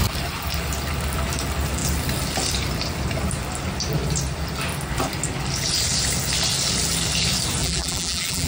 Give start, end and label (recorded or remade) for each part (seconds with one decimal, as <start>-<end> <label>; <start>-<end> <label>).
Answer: 0.0-7.6 recorded; 7.6-8.5 remade